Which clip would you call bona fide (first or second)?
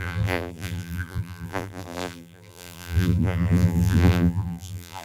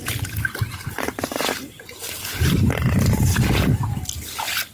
second